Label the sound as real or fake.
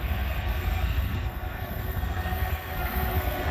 fake